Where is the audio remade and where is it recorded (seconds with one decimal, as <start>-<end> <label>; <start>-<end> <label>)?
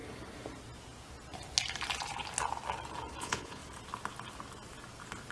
0.0-3.2 recorded; 3.2-3.6 remade; 3.6-5.3 recorded